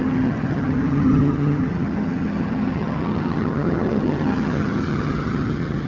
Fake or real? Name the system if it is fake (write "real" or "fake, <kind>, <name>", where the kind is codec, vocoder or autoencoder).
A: fake, vocoder, HiFi-GAN